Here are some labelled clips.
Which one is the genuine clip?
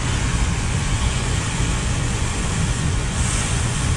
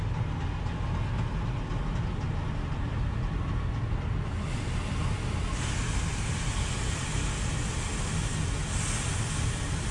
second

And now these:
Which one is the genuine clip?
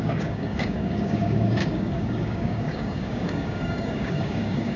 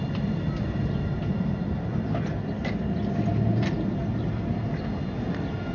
second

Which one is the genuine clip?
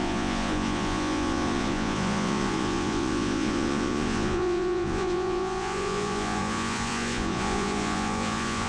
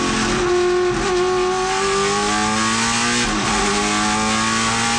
second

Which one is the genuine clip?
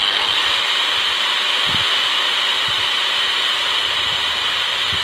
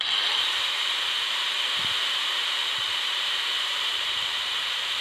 first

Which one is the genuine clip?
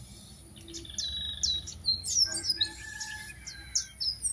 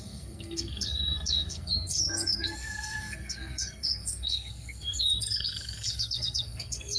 first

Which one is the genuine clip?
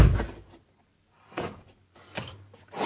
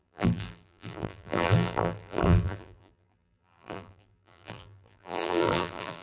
first